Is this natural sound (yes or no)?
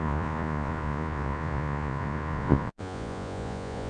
no